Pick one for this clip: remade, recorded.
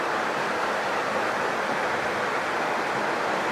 recorded